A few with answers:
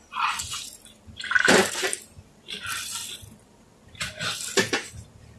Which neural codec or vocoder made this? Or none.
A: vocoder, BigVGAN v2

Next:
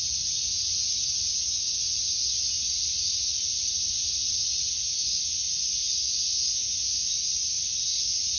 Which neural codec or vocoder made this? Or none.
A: none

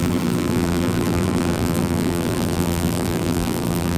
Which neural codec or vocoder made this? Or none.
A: vocoder, BigVGAN v2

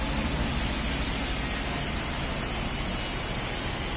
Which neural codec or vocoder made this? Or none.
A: none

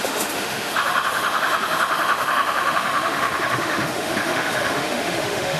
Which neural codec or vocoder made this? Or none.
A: autoencoder, DAC-VAE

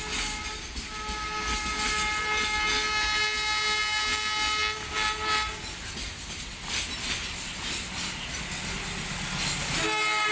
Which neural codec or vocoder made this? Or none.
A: none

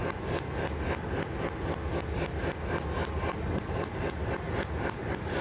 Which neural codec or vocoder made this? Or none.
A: none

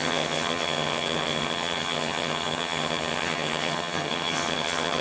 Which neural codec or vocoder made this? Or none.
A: vocoder, HiFi-GAN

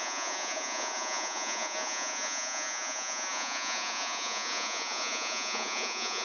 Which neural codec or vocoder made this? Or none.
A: vocoder, Vocos